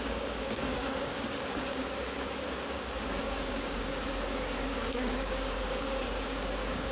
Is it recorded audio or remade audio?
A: remade